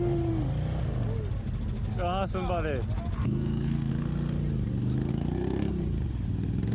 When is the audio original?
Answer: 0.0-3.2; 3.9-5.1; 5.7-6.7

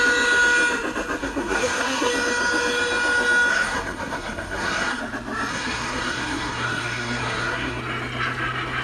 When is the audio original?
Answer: 0.0-1.2; 2.1-3.5; 5.0-5.5; 7.8-8.8

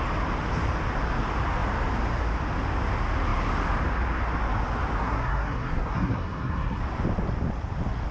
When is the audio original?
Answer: 0.0-5.0; 6.8-8.1

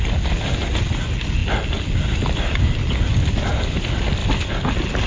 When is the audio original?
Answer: 0.0-5.1